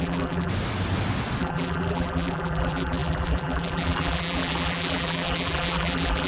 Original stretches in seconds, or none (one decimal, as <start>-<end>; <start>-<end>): 0.5-1.4